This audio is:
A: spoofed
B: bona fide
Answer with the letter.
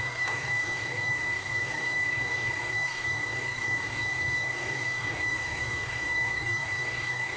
A